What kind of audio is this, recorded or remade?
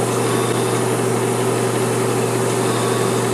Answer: recorded